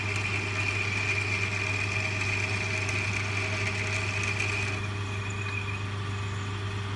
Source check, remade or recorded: recorded